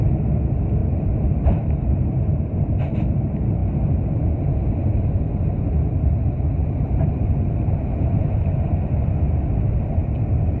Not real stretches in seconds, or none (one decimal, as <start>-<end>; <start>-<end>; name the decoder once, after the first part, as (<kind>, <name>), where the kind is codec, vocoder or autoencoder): 0.8-2.7 (vocoder, BigVGAN v2); 6.6-8.8

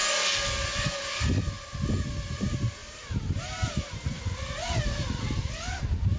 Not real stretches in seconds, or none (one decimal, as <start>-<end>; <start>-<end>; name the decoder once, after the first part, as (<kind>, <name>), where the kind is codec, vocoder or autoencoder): 2.1-6.2 (vocoder, BigVGAN v2)

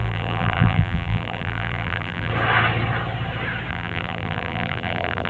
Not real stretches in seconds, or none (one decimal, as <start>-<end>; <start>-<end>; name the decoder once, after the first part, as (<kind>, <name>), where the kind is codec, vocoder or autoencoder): 0.0-2.3 (vocoder, BigVGAN v2); 3.7-5.3

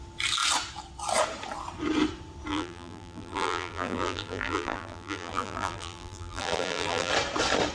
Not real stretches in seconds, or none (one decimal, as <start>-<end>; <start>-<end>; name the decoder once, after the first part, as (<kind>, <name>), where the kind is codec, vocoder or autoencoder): 2.5-7.1 (vocoder, BigVGAN v2)

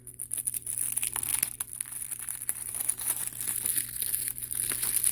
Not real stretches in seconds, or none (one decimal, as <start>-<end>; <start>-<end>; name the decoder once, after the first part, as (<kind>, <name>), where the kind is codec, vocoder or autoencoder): 1.3-2.7 (vocoder, BigVGAN v2)

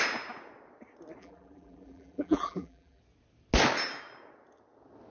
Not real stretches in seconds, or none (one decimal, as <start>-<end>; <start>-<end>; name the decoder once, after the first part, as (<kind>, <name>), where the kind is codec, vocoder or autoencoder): 1.2-3.0 (vocoder, BigVGAN v2)

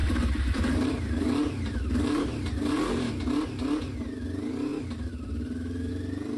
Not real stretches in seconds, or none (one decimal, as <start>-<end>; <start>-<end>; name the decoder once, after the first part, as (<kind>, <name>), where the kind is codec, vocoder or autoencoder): 0.0-3.1 (vocoder, BigVGAN v2); 4.7-5.9

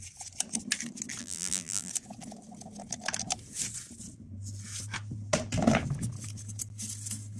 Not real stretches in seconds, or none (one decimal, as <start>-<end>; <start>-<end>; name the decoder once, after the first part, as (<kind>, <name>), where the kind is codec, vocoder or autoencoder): 1.2-1.9 (vocoder, BigVGAN v2)